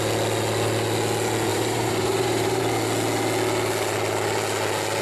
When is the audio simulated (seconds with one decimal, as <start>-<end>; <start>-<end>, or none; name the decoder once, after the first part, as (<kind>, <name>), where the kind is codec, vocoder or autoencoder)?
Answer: 1.5-2.6 (vocoder, BigVGAN v2)